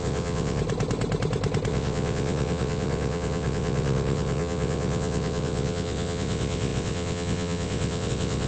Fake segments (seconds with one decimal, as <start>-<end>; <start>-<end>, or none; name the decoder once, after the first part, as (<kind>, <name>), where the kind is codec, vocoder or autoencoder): 0.0-0.6 (vocoder, WaveNeXt); 1.7-8.5